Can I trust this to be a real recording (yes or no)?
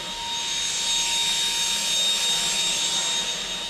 yes